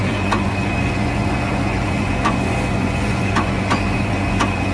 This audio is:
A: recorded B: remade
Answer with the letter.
B